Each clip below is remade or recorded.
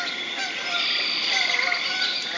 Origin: recorded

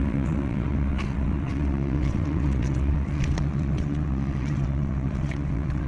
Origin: remade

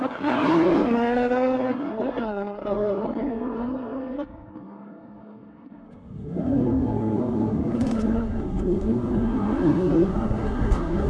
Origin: remade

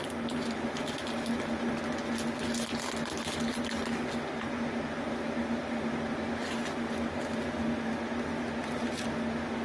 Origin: recorded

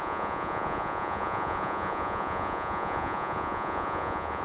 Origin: remade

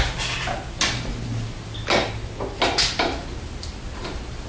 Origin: recorded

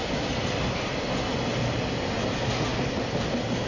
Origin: recorded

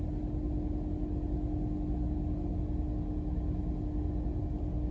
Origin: recorded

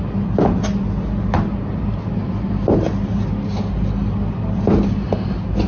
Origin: recorded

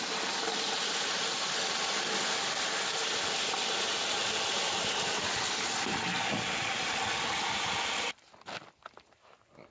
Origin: recorded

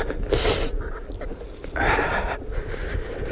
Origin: recorded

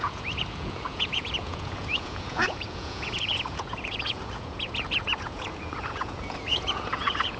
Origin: remade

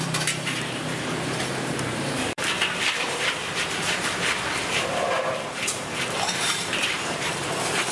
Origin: remade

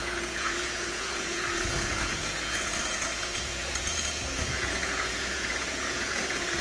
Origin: remade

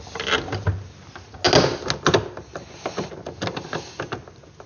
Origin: recorded